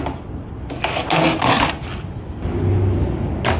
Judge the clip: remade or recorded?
recorded